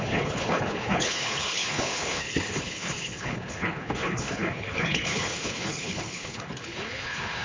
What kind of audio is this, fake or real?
fake